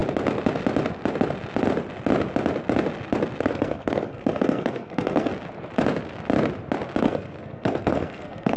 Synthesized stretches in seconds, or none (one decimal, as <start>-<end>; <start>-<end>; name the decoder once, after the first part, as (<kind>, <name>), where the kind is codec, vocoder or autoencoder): 3.4-5.3 (codec, SNAC); 7.0-8.6